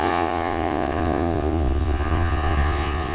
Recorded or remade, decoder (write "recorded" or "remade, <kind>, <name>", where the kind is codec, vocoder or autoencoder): remade, vocoder, Vocos